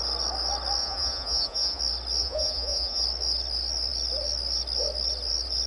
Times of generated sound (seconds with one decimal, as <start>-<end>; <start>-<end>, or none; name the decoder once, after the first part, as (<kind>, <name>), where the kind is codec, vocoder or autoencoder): 0.8-1.8 (vocoder, Vocos); 2.2-3.0